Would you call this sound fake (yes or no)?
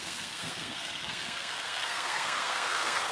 yes